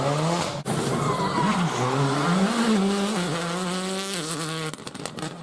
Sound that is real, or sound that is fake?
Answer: real